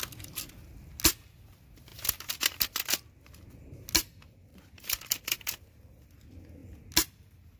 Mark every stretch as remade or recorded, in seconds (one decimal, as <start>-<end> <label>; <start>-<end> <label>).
0.0-4.5 recorded; 4.5-5.0 remade; 5.0-7.6 recorded